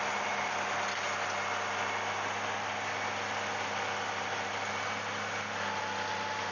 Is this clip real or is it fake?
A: real